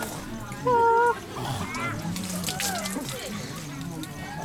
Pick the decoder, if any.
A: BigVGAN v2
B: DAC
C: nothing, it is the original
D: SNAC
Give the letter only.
C